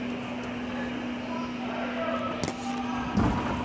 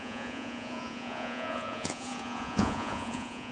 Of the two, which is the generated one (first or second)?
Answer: second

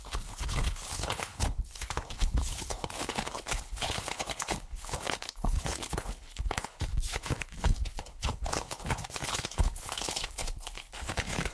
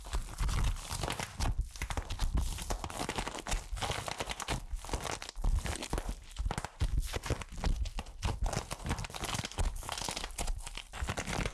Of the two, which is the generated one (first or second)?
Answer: first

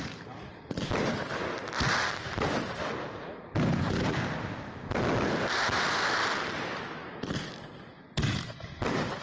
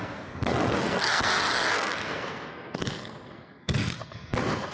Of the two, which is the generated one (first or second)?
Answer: second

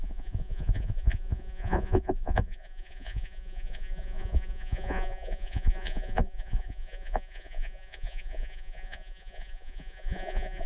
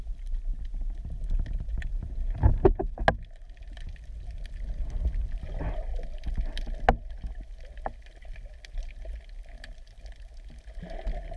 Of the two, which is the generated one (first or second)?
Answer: first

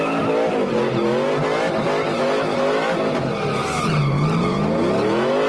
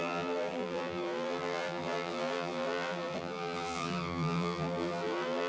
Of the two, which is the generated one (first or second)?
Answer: second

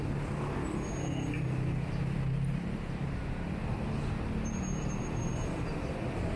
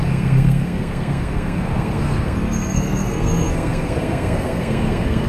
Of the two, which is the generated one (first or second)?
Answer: second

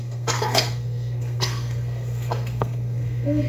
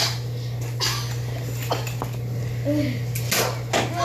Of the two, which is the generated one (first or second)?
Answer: first